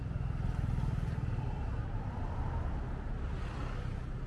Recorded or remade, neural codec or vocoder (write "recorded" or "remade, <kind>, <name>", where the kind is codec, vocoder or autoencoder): recorded